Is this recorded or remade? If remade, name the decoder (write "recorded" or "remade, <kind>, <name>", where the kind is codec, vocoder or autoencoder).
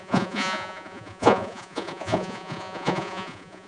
remade, vocoder, Vocos